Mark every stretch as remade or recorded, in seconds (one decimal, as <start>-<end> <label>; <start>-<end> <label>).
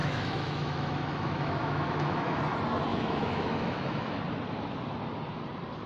0.0-2.4 remade; 2.4-2.9 recorded; 2.9-4.2 remade; 4.2-5.9 recorded